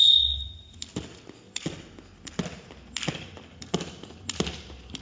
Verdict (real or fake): real